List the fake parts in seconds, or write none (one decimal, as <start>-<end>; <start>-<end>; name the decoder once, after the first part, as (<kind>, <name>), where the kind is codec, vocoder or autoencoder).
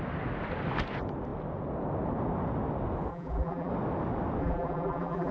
3.1-3.7 (vocoder, BigVGAN v2); 4.4-5.3